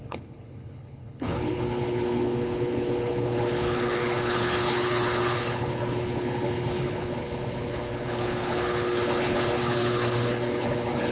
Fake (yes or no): yes